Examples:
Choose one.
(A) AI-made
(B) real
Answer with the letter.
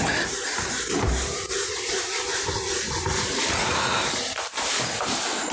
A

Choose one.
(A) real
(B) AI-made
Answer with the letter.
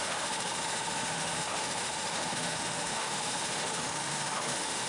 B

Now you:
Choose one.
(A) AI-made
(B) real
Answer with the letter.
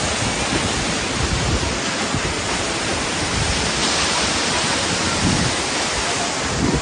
B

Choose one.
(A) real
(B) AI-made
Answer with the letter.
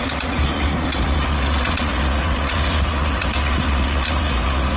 B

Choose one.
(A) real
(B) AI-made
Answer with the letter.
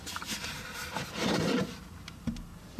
A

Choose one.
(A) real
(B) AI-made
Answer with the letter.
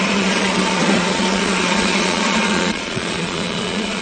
B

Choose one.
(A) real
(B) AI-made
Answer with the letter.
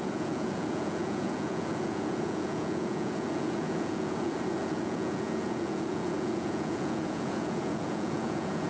B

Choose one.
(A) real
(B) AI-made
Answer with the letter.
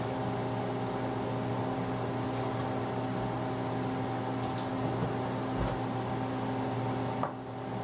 A